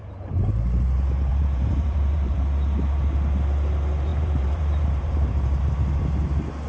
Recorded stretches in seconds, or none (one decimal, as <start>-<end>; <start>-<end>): 0.0-1.3; 2.4-4.1; 5.9-6.7